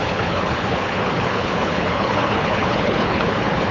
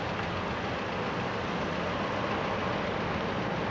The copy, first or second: first